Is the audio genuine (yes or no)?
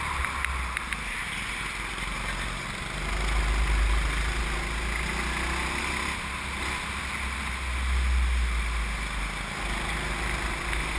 yes